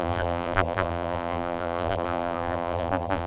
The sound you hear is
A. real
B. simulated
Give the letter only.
B